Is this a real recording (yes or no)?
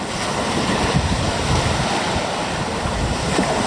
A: yes